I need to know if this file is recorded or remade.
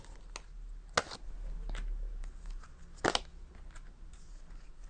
recorded